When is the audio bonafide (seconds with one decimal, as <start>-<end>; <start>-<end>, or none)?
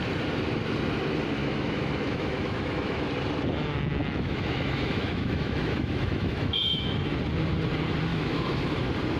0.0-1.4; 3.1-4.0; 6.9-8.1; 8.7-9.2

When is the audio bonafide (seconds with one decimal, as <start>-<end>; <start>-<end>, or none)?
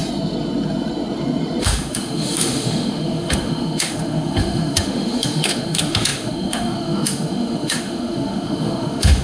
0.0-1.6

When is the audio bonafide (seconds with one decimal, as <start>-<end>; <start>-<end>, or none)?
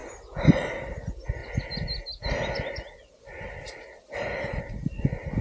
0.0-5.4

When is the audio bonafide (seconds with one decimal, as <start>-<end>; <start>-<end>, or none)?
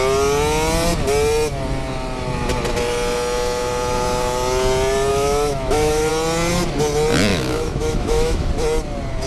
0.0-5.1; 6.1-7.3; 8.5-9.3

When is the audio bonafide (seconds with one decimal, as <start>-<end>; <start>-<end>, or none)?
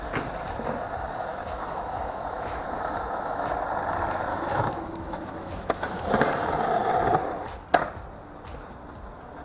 0.0-1.3; 3.5-4.3; 6.1-9.4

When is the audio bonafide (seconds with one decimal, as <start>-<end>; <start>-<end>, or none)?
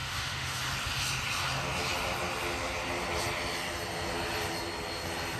0.6-5.4